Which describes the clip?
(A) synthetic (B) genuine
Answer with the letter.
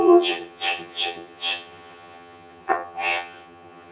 A